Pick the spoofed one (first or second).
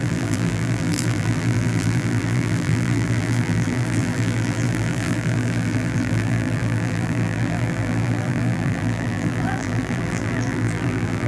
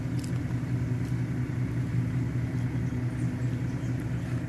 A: first